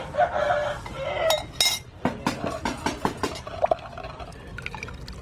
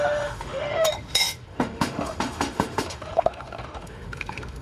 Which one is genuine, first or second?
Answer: first